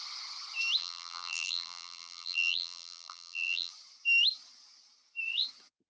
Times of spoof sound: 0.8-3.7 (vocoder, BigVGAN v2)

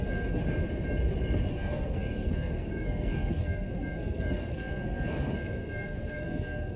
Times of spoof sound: 0.0-0.4 (codec, SNAC); 1.5-6.8

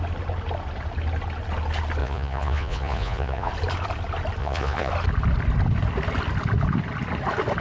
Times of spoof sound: 2.0-3.5 (vocoder, Vocos); 4.4-4.9

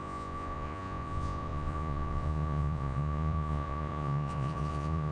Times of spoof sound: 0.0-5.1 (vocoder, Vocos)

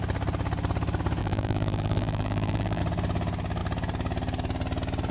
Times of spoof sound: 1.2-2.8 (vocoder, BigVGAN v2)

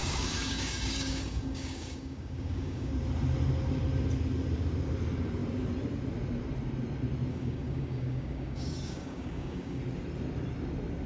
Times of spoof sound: 0.0-2.9 (codec, DAC); 7.3-9.8